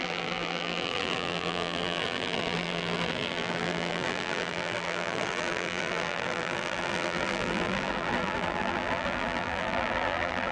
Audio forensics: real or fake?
fake